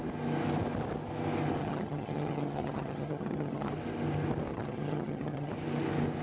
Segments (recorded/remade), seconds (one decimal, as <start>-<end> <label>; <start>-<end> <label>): 0.0-1.6 recorded; 1.6-3.7 remade; 3.7-4.5 recorded; 4.5-5.5 remade; 5.5-6.2 recorded